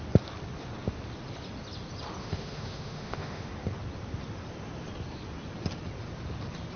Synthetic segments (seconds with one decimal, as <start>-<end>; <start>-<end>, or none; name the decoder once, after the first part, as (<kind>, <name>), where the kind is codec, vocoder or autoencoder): 2.2-3.5 (autoencoder, DAC-VAE)